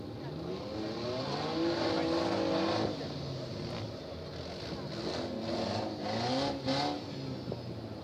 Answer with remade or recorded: recorded